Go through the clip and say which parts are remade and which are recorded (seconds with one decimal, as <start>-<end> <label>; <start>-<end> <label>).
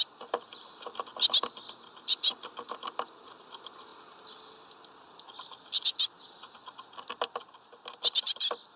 0.0-8.8 recorded